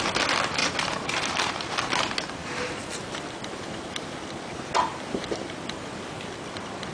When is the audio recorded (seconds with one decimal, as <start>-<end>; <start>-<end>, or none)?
0.0-0.6; 1.7-4.9; 5.6-6.9